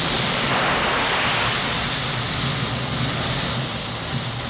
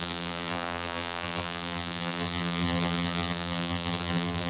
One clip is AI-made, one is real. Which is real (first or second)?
first